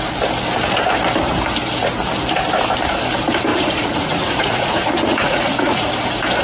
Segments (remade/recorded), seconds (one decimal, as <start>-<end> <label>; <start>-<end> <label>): 0.0-3.5 recorded; 3.5-5.9 remade; 5.9-6.4 recorded